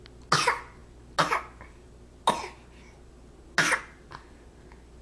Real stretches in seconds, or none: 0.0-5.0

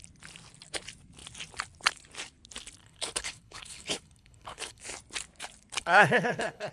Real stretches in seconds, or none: 0.0-2.8; 4.8-5.8

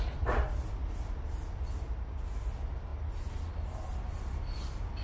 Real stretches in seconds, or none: 0.0-5.0

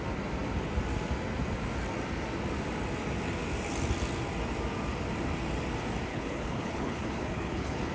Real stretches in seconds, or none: 0.0-6.1

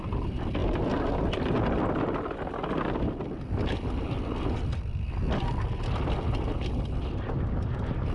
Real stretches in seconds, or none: 0.0-8.1

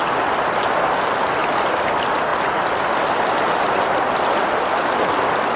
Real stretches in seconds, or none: 0.0-5.6

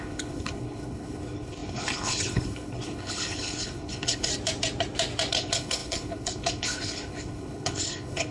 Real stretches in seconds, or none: 4.3-5.3

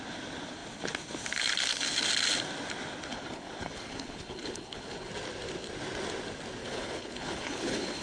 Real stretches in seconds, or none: 0.0-3.1; 5.1-6.6